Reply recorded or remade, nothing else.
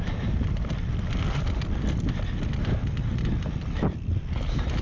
recorded